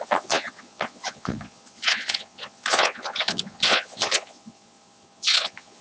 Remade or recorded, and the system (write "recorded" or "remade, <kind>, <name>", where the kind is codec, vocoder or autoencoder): remade, vocoder, Vocos